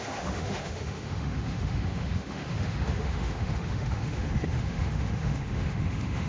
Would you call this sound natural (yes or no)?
no